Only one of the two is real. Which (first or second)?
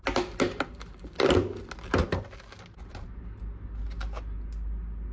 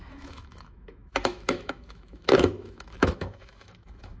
first